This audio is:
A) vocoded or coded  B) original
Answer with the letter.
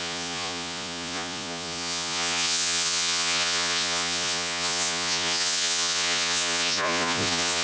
A